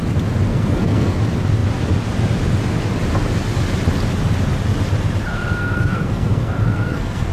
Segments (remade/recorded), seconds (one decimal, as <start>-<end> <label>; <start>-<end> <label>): 0.0-0.5 recorded; 0.5-1.2 remade; 1.2-5.3 recorded; 5.3-7.3 remade